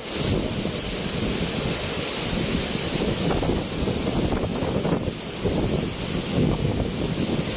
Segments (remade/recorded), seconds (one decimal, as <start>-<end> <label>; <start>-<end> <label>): 0.0-6.3 recorded; 6.3-6.9 remade; 6.9-7.6 recorded